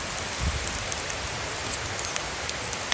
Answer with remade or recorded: recorded